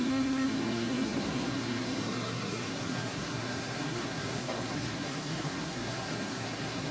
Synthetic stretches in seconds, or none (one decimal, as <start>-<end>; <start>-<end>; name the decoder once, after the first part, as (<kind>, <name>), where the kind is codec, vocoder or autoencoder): 0.0-6.9 (codec, SNAC)